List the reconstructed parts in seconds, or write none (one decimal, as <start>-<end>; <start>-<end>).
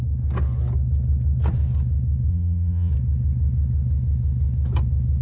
2.3-2.9